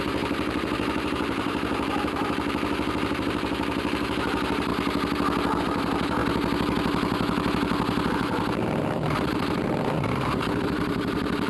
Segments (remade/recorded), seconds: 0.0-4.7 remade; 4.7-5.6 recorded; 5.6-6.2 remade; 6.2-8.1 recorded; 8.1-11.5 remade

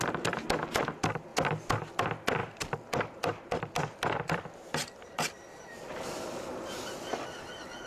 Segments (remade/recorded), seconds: 0.0-2.4 recorded; 2.4-6.9 remade; 6.9-7.9 recorded

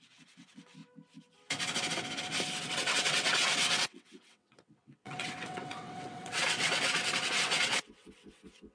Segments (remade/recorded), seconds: 0.0-0.8 remade; 0.8-2.6 recorded; 2.6-8.7 remade

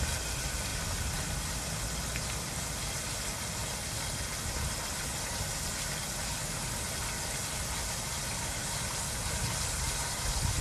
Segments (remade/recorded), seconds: 0.0-10.6 recorded